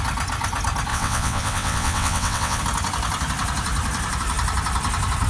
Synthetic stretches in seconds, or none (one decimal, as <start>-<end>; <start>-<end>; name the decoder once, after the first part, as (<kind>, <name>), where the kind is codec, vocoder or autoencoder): 0.9-2.6 (vocoder, WaveNeXt)